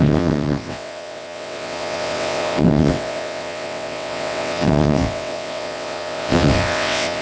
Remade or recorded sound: remade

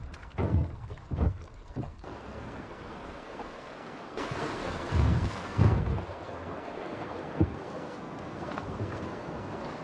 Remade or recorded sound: remade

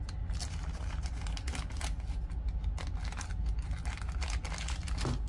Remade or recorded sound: recorded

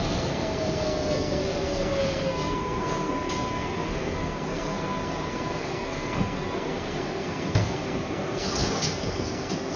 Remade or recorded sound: remade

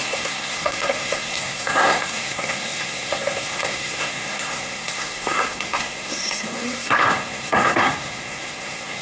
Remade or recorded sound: remade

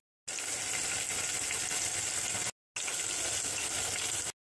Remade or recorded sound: recorded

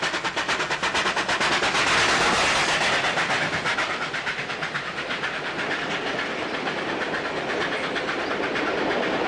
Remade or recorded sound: recorded